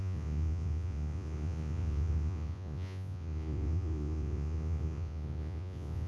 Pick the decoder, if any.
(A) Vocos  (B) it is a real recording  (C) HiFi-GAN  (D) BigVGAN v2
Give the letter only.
A